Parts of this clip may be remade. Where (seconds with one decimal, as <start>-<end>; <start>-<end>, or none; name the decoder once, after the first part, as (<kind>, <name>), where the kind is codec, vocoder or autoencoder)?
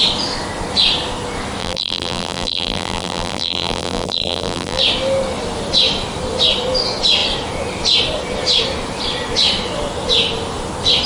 1.6-4.8 (vocoder, BigVGAN v2)